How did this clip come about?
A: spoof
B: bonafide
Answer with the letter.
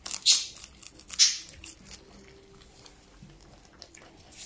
B